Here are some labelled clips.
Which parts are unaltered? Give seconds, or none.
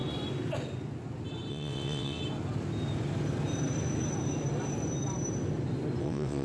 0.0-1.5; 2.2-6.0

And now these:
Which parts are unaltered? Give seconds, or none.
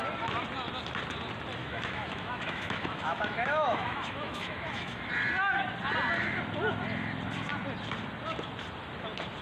0.0-1.6; 5.1-9.4